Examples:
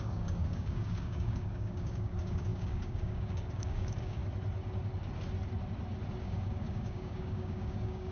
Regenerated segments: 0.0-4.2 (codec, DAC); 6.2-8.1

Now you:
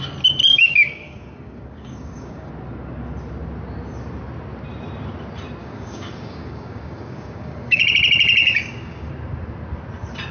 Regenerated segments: 0.5-2.5 (codec, DAC); 5.6-7.8; 8.4-9.1

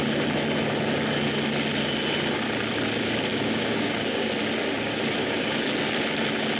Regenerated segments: 3.3-4.3 (codec, DAC); 5.2-5.7

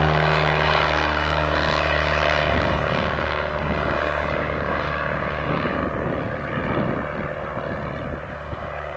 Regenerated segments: 0.0-5.8 (codec, DAC); 8.3-9.0

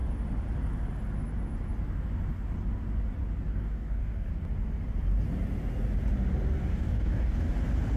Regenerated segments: 3.5-4.3 (codec, DAC); 6.7-7.6